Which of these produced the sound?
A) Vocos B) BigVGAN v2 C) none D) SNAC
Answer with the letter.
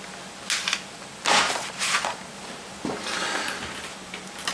C